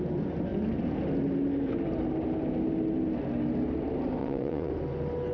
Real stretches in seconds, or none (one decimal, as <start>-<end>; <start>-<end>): 0.0-4.2; 4.7-5.3

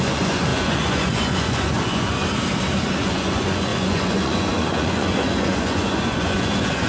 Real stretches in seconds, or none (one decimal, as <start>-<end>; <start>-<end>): 2.2-3.0